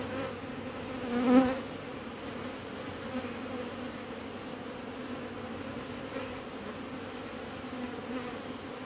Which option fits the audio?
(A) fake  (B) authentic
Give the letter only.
B